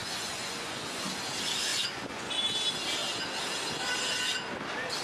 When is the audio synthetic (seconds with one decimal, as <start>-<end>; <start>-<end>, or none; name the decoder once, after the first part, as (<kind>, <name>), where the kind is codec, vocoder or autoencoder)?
0.0-1.0 (vocoder, Vocos); 1.7-2.3